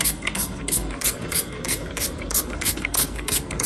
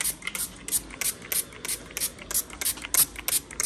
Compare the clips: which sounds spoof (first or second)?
first